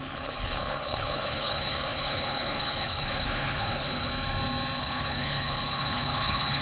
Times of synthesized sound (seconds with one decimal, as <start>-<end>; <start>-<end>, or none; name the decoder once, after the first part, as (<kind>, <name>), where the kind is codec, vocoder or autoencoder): 0.0-4.1 (codec, HILCodec); 4.8-6.6